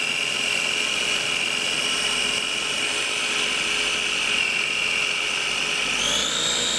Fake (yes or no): no